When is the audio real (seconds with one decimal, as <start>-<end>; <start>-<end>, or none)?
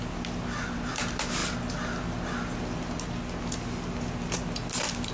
0.0-5.1